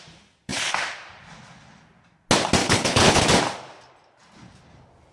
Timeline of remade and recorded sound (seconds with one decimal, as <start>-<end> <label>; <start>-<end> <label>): 0.0-2.6 recorded; 2.6-3.2 remade; 3.2-5.1 recorded